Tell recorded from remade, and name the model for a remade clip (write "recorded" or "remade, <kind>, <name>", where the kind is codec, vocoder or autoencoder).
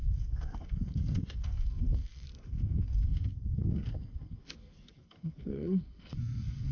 remade, codec, SNAC